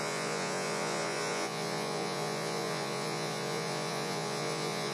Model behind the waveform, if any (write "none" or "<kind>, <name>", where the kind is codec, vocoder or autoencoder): vocoder, Vocos